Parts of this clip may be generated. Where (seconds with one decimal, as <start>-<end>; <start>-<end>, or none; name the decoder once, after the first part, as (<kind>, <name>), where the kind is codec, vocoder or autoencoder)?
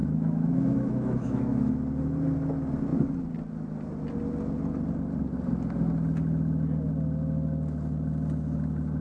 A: 0.0-1.7 (autoencoder, DAC-VAE)